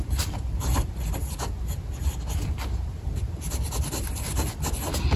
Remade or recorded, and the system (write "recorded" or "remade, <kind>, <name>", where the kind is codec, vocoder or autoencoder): recorded